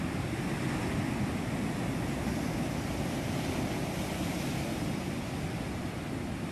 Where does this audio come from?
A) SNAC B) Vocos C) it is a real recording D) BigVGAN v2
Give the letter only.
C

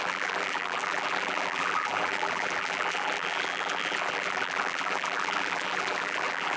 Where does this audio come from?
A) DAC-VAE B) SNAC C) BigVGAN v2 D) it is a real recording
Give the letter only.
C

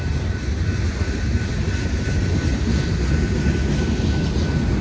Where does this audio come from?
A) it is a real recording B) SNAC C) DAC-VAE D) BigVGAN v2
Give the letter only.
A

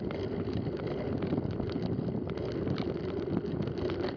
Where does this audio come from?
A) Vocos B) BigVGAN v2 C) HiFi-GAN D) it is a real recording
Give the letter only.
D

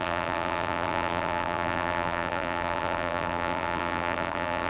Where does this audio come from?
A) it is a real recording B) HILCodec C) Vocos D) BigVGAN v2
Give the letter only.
D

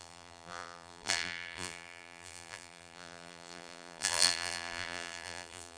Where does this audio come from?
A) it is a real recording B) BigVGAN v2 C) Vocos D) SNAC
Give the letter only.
B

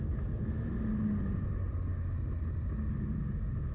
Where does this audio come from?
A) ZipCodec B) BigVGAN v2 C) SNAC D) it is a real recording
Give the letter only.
D